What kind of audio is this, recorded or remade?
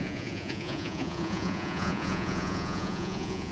remade